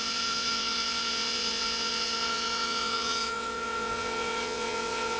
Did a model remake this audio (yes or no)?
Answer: yes